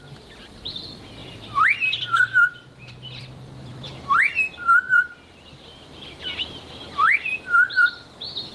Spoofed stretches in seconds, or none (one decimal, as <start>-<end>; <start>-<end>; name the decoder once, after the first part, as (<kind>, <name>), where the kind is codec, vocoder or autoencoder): 0.0-1.2 (vocoder, BigVGAN v2); 1.8-8.5